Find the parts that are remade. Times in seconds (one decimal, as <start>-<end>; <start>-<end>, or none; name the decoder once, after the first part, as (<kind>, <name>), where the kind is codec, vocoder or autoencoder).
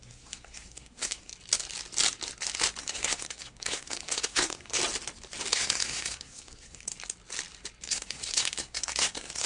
0.0-1.3 (codec, SNAC); 2.8-4.8; 5.5-6.9; 7.8-9.5